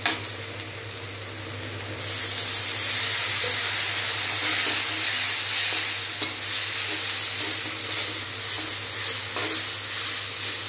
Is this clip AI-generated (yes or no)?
no